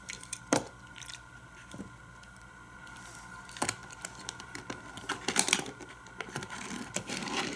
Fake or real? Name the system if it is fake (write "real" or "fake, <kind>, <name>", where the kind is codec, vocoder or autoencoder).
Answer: fake, vocoder, BigVGAN v2